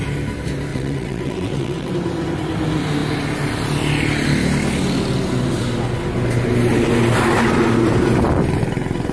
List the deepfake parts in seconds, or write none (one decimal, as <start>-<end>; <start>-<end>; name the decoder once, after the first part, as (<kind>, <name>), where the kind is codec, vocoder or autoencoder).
0.7-1.9 (vocoder, WaveNeXt)